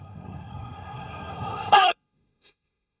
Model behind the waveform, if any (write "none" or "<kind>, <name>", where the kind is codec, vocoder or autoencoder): codec, SNAC